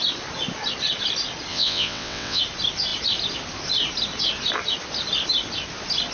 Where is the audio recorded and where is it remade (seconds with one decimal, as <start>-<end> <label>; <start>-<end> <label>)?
0.0-1.5 recorded; 1.5-2.4 remade; 2.4-6.1 recorded